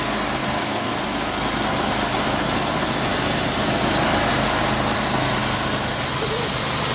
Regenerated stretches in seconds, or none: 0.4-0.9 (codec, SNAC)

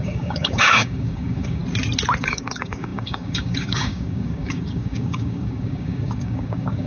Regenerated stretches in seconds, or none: 0.0-1.6 (codec, DAC); 2.2-6.9

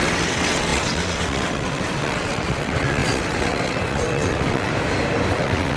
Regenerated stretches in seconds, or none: 0.0-4.7 (vocoder, WaveNeXt); 5.3-5.8

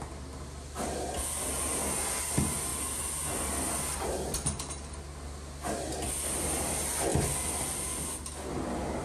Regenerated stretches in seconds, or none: none